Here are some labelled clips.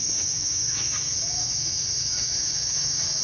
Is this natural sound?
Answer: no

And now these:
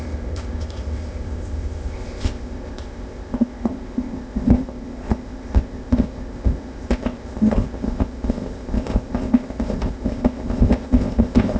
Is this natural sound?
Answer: no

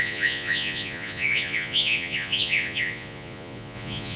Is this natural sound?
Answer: no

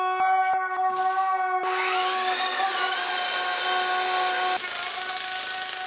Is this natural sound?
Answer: yes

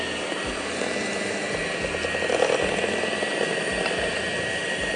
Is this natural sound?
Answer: yes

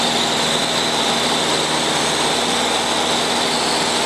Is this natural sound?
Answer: yes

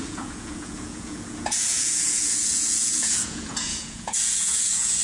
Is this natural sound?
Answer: no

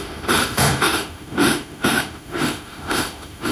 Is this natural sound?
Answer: no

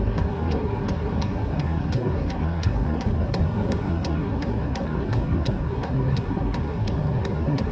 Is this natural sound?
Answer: no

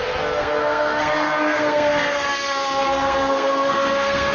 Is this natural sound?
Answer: no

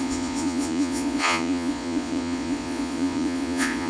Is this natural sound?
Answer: no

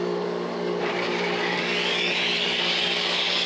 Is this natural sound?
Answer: no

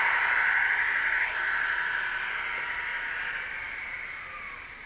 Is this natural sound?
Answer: yes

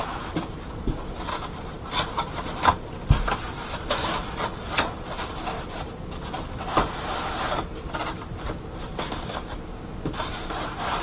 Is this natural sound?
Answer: no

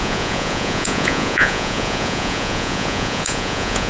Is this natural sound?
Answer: no